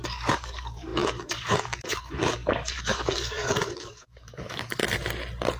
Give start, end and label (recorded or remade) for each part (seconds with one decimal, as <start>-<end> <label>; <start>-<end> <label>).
0.0-4.8 remade; 4.8-5.6 recorded